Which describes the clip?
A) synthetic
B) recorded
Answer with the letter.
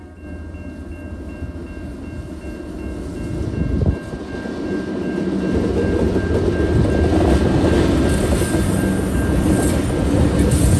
B